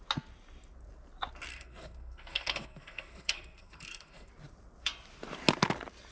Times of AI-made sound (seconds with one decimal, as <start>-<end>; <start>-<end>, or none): 1.5-4.3